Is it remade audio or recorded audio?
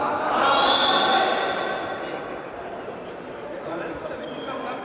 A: recorded